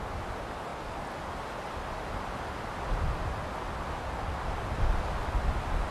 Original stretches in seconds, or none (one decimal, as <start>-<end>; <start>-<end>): 0.0-5.9